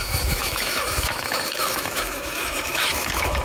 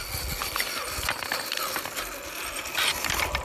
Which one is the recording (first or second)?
second